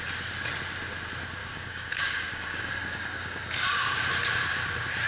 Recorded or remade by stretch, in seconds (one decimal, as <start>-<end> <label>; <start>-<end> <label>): 0.0-1.4 recorded; 1.4-4.1 remade; 4.1-5.1 recorded